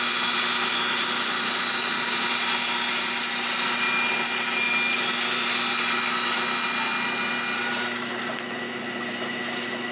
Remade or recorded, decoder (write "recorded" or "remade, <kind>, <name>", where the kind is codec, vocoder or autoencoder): recorded